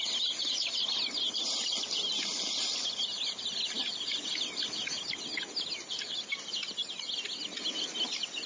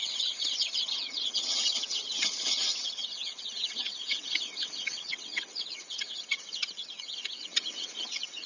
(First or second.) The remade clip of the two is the second